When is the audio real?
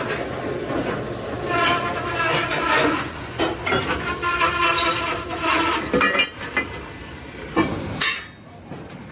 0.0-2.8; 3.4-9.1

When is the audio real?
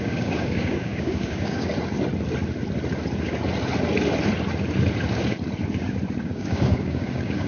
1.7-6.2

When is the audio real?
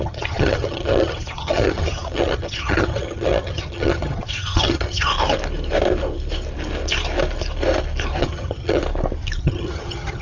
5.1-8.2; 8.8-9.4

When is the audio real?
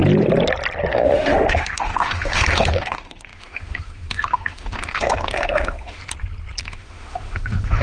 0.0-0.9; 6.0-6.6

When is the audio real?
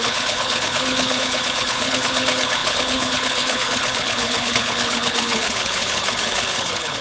none